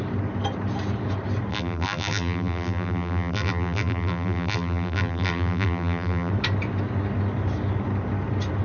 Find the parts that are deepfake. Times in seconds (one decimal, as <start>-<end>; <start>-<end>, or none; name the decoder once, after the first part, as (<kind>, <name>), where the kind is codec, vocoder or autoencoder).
1.5-6.3 (vocoder, BigVGAN v2)